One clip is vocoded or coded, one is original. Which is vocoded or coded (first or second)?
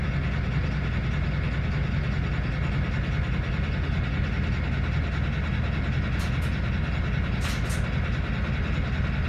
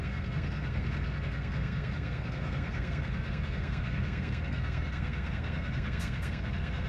second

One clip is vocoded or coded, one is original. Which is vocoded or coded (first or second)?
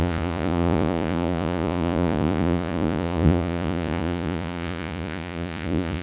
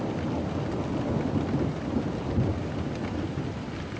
first